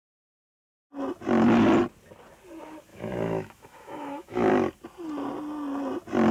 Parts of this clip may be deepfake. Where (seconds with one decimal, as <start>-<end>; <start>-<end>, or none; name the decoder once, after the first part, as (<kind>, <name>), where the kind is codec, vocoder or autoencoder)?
2.9-4.5 (autoencoder, DAC-VAE)